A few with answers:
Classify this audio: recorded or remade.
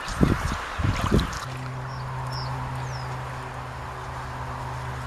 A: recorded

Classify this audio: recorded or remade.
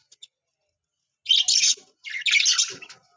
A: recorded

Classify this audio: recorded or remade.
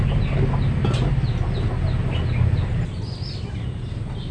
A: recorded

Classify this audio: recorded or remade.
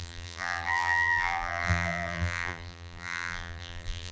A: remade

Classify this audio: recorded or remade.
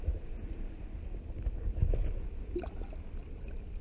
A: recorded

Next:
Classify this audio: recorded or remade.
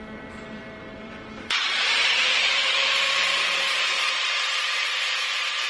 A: remade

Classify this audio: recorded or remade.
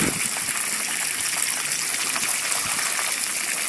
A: recorded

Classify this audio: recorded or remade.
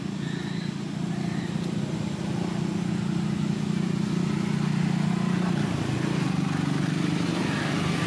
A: recorded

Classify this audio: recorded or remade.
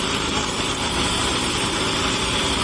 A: remade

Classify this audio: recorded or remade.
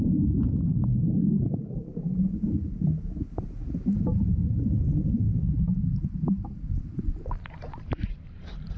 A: remade